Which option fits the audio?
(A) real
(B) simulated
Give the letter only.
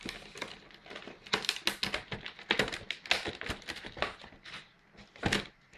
A